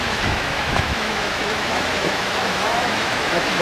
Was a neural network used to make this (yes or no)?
yes